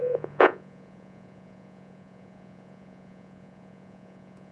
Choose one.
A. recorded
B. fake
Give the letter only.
B